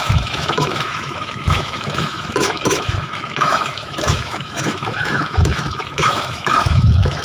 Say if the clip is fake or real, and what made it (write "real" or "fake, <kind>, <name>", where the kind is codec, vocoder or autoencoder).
fake, autoencoder, DAC-VAE